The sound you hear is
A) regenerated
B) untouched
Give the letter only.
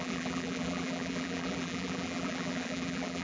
A